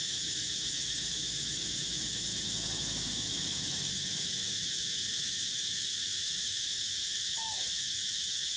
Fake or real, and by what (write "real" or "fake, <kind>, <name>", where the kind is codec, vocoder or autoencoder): fake, autoencoder, DAC-VAE